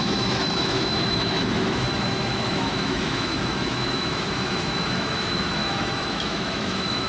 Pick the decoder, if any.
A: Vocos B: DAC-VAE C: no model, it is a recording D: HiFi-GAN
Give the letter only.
B